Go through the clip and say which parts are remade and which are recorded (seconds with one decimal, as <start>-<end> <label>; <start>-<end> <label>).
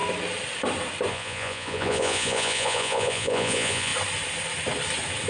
0.0-1.1 recorded; 1.1-3.9 remade; 3.9-5.3 recorded